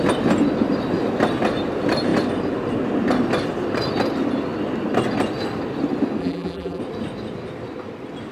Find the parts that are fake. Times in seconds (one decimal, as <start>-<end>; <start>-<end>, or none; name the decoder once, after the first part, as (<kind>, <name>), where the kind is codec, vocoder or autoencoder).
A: 6.2-6.8 (vocoder, BigVGAN v2)